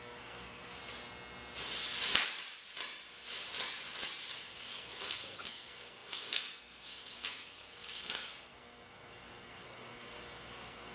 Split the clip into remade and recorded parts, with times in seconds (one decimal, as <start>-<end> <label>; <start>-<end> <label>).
0.0-0.8 remade; 0.8-4.3 recorded; 4.3-10.9 remade

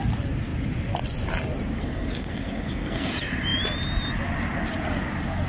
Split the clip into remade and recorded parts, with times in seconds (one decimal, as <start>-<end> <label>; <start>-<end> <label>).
0.0-1.8 recorded; 1.8-3.1 remade; 3.1-5.5 recorded

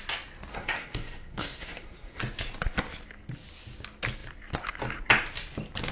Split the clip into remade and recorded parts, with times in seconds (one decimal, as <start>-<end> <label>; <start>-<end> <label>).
0.0-0.5 recorded; 0.5-2.2 remade; 2.2-5.9 recorded

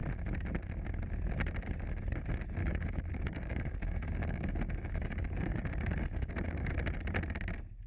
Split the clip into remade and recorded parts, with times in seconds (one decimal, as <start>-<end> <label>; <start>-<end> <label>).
0.0-2.6 recorded; 2.6-6.7 remade; 6.7-7.9 recorded

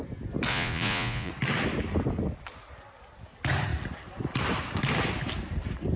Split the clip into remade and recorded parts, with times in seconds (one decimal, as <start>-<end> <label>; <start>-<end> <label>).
0.0-0.5 recorded; 0.5-1.3 remade; 1.3-6.0 recorded